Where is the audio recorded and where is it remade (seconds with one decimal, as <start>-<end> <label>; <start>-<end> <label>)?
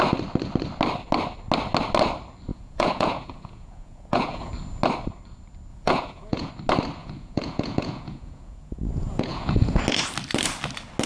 0.0-2.5 recorded; 2.5-4.5 remade; 4.5-5.7 recorded; 5.7-6.5 remade; 6.5-7.0 recorded; 7.0-9.8 remade; 9.8-11.1 recorded